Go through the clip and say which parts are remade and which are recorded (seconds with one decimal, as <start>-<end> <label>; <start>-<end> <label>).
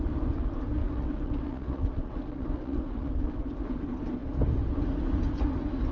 0.0-0.8 recorded; 0.8-3.3 remade; 3.3-5.9 recorded